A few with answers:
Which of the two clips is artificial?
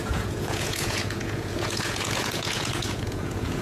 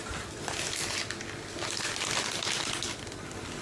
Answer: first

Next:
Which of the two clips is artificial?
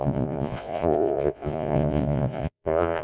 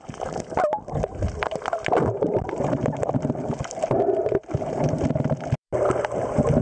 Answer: first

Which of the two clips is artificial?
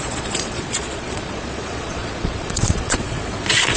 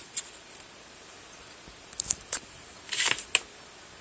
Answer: first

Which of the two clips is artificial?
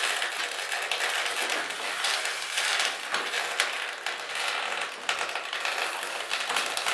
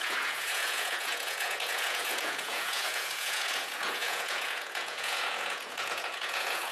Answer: second